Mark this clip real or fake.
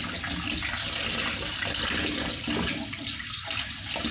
real